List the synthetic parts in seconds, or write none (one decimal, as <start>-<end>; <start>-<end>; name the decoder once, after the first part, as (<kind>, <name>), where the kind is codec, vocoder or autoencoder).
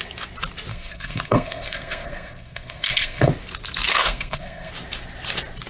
0.7-3.3 (codec, SNAC); 3.9-4.7